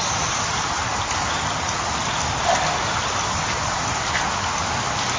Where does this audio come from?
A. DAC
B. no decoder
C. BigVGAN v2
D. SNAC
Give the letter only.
C